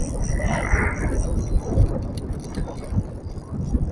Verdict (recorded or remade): recorded